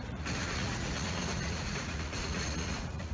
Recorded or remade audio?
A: remade